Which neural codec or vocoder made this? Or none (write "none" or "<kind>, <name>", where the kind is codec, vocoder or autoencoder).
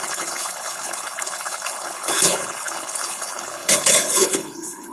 codec, HILCodec